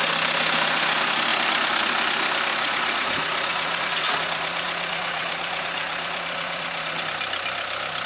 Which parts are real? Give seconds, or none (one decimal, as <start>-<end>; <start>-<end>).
0.0-2.5; 7.0-8.1